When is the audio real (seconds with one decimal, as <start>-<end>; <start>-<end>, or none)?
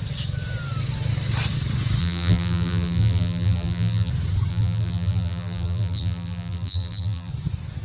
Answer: 0.0-2.0; 4.1-4.5; 7.3-7.8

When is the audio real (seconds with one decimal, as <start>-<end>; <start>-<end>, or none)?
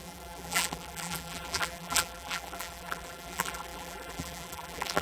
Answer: none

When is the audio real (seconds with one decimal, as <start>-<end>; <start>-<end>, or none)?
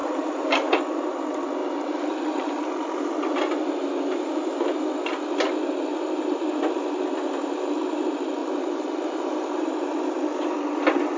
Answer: 0.8-1.6; 2.6-5.9; 6.6-8.4; 10.0-11.2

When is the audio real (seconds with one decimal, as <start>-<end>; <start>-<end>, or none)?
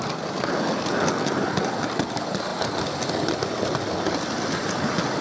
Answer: 0.0-5.2